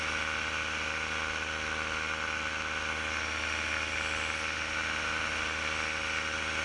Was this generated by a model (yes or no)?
no